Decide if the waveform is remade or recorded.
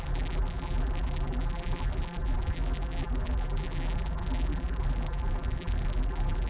remade